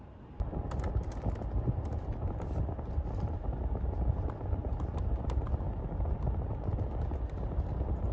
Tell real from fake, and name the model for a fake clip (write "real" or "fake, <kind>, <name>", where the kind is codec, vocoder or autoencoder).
real